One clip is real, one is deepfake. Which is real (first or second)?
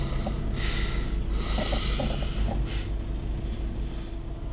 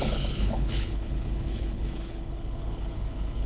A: first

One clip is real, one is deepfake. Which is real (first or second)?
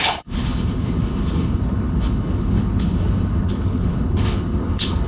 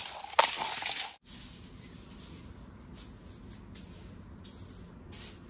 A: second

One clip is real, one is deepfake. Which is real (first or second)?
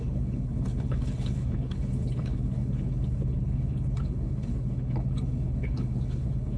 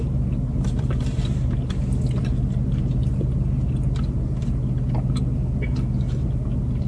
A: second